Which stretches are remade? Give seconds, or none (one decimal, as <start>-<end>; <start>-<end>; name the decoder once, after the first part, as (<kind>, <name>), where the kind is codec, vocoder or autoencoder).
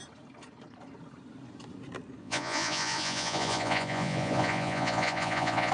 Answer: 2.2-5.7 (vocoder, Vocos)